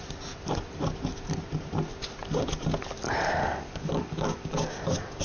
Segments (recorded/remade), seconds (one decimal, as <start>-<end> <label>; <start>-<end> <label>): 0.0-3.4 recorded; 3.4-5.2 remade

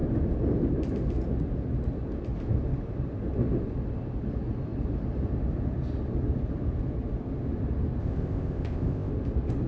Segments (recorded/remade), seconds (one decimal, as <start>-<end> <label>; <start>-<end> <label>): 0.0-8.0 recorded; 8.0-9.1 remade; 9.1-9.7 recorded

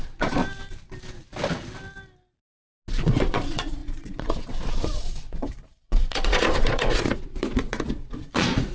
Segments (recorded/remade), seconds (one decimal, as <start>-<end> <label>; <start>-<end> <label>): 0.0-0.4 remade; 0.4-3.0 recorded; 3.0-8.7 remade

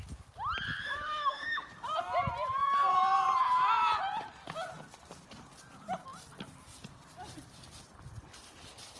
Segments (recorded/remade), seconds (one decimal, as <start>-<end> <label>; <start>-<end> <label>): 0.0-0.8 recorded; 0.8-1.7 remade; 1.7-9.0 recorded

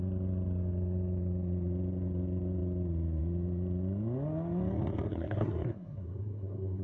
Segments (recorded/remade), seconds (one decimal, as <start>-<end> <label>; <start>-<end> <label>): 0.0-5.1 recorded; 5.1-6.8 remade

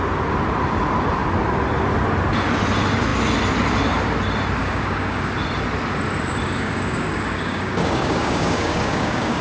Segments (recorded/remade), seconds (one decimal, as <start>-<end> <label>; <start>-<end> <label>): 0.0-4.6 recorded; 4.6-5.3 remade; 5.3-6.4 recorded; 6.4-9.4 remade

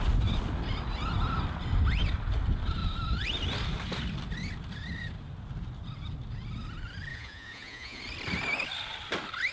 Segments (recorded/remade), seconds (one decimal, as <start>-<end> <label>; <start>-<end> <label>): 0.0-7.1 recorded; 7.1-8.0 remade; 8.0-9.5 recorded